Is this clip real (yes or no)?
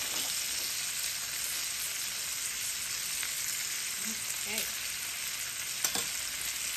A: yes